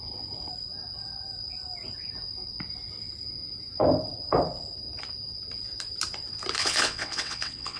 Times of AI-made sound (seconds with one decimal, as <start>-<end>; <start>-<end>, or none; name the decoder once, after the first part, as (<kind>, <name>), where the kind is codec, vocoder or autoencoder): 6.6-7.8 (vocoder, WaveNeXt)